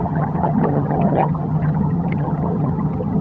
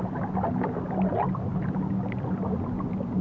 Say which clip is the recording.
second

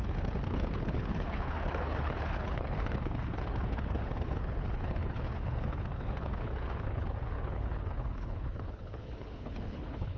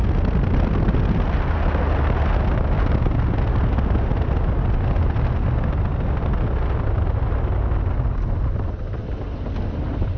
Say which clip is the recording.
second